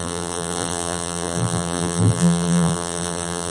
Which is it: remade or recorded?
remade